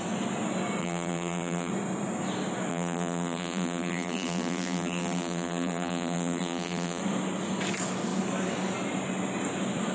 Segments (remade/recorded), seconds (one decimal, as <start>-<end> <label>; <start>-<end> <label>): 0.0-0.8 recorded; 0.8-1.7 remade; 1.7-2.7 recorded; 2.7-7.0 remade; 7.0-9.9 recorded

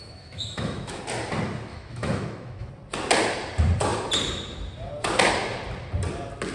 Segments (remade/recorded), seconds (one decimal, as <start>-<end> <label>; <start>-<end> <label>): 0.0-1.0 remade; 1.0-1.7 recorded; 1.7-2.7 remade; 2.7-6.5 recorded

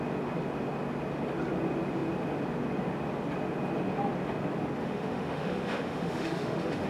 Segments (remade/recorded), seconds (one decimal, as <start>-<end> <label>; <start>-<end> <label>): 0.0-4.8 recorded; 4.8-6.9 remade